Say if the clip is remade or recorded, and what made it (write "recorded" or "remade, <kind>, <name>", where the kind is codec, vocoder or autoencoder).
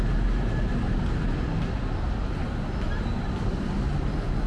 recorded